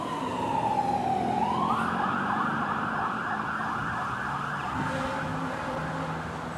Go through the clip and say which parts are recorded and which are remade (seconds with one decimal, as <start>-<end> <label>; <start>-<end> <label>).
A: 0.0-0.5 recorded; 0.5-3.2 remade; 3.2-5.3 recorded; 5.3-5.8 remade; 5.8-6.6 recorded